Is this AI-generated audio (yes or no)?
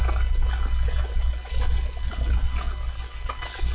no